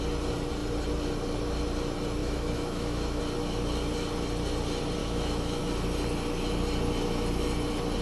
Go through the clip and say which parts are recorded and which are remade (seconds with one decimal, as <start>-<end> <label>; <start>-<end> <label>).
0.0-2.2 recorded; 2.2-3.2 remade; 3.2-5.0 recorded; 5.0-5.6 remade; 5.6-8.0 recorded